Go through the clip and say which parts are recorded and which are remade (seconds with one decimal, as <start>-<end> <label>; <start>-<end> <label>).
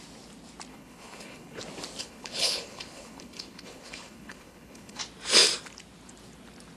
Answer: 0.0-0.7 recorded; 0.7-1.6 remade; 1.6-2.0 recorded; 2.0-5.0 remade; 5.0-6.8 recorded